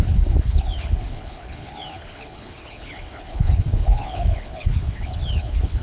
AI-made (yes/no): yes